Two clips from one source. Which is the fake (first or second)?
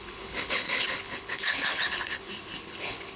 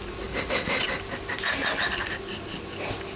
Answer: first